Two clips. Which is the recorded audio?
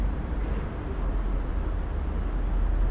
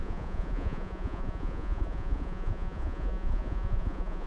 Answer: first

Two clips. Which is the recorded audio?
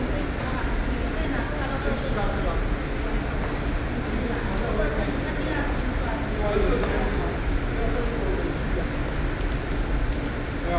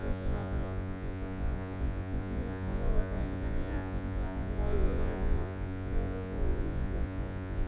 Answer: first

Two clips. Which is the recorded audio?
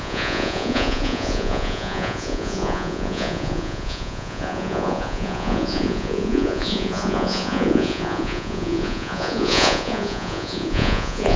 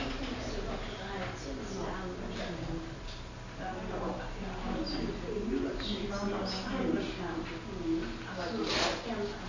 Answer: second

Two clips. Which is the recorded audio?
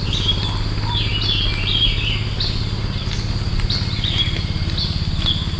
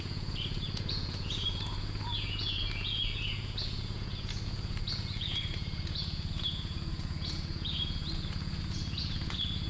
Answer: first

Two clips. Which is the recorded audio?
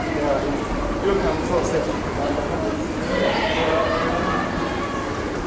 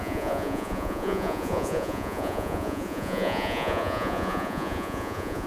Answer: first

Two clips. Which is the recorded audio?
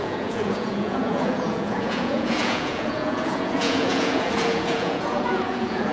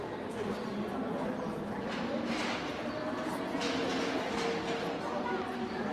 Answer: second